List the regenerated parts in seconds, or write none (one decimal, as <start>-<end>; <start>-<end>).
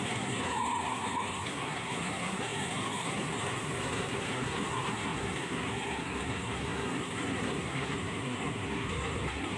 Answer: 0.0-9.6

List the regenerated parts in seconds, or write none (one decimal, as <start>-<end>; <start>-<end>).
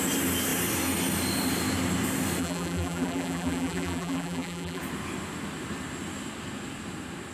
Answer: 2.4-4.8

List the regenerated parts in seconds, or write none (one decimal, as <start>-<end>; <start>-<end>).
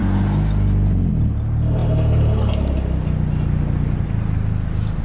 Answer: none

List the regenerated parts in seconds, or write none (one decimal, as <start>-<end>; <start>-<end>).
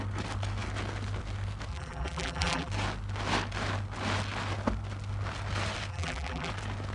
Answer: 1.7-2.7; 5.9-6.5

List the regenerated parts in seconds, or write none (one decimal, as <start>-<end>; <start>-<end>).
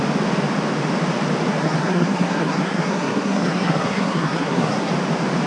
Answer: 1.6-4.9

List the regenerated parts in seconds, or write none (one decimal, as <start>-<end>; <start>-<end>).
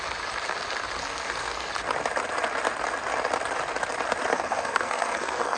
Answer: 1.0-1.7; 4.3-5.6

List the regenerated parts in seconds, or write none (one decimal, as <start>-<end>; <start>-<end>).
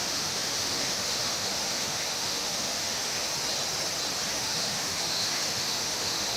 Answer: 0.0-3.3; 4.3-6.4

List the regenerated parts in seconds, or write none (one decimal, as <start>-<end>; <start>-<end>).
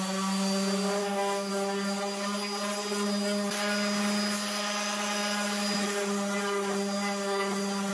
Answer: 1.0-1.5